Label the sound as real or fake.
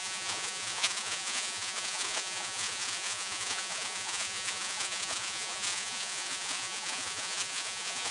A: fake